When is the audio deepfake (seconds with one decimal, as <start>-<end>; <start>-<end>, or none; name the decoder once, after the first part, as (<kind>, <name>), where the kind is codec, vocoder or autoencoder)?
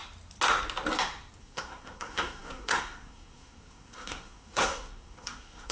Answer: 1.4-5.7 (codec, SNAC)